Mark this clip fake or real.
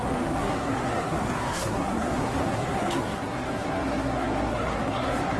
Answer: fake